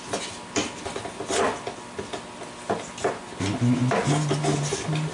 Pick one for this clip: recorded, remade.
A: recorded